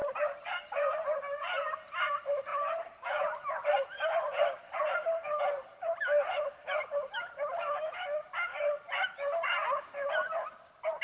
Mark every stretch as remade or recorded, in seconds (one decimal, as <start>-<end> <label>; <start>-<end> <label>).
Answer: 0.0-1.0 remade; 1.0-2.5 recorded; 2.5-5.4 remade; 5.4-8.5 recorded; 8.5-10.1 remade; 10.1-11.0 recorded

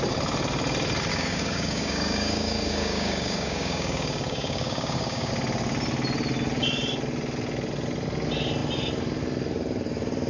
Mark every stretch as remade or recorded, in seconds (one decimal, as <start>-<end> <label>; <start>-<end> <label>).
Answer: 0.0-1.1 recorded; 1.1-5.3 remade; 5.3-10.3 recorded

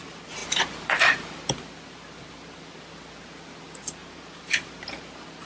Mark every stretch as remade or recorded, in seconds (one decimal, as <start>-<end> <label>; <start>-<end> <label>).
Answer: 0.0-4.0 recorded; 4.0-4.7 remade; 4.7-5.5 recorded

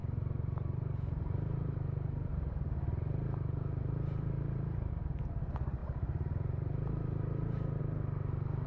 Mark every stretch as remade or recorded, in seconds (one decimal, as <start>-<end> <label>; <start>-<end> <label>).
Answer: 0.0-4.9 remade; 4.9-5.8 recorded; 5.8-7.8 remade; 7.8-8.7 recorded

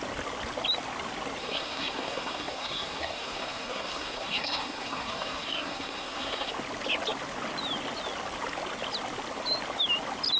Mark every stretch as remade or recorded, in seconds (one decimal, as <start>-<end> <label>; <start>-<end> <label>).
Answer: 0.0-1.4 recorded; 1.4-6.5 remade; 6.5-10.4 recorded

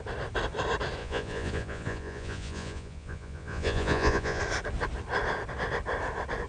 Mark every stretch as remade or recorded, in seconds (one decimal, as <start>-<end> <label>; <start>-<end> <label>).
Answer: 0.0-1.0 recorded; 1.0-4.4 remade; 4.4-6.5 recorded